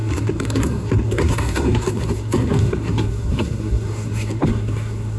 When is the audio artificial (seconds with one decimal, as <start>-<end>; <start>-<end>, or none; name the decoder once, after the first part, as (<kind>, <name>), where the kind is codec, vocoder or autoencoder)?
0.0-5.2 (codec, SNAC)